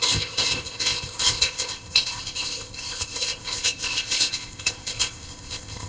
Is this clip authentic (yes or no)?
no